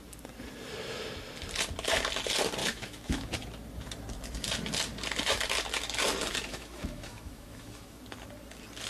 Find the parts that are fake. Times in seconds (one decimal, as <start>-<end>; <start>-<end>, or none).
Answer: 2.6-3.3; 6.5-8.0